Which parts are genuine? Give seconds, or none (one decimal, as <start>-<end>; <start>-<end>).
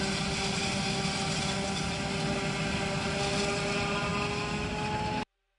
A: 0.0-5.6